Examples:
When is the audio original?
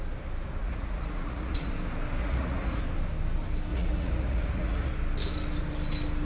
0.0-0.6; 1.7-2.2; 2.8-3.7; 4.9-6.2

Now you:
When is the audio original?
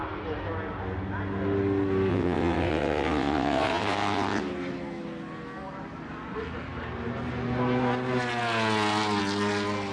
0.0-2.1; 4.4-9.9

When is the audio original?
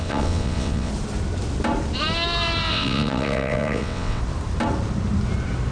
0.9-2.7; 4.2-5.7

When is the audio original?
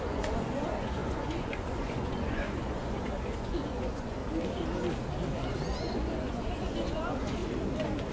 4.2-5.8; 7.4-8.1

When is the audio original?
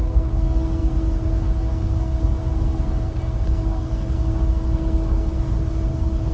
none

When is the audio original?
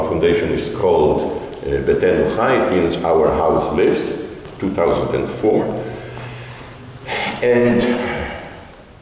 0.0-0.8; 2.0-7.6; 8.2-9.0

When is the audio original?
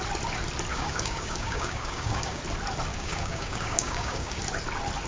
0.0-0.7; 2.4-2.9; 4.4-5.1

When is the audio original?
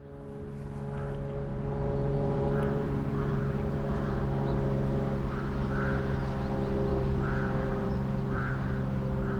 0.0-1.5; 4.2-6.9; 8.5-9.4